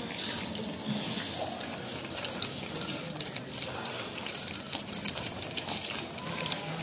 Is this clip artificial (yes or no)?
no